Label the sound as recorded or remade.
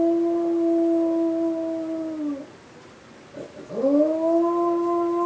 recorded